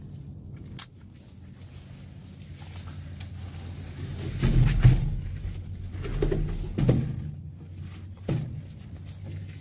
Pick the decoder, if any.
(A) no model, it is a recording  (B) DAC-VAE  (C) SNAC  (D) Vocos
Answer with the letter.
A